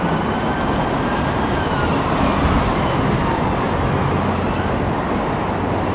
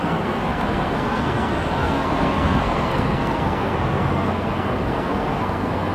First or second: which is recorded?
first